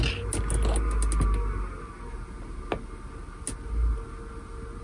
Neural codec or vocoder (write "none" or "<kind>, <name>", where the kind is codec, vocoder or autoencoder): none